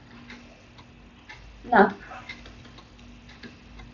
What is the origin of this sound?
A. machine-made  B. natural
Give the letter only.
B